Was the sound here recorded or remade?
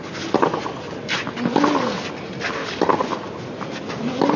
recorded